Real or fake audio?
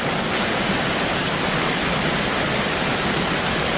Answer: real